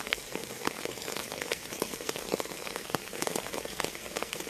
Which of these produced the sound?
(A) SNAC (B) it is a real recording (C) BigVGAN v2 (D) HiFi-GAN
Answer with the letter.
A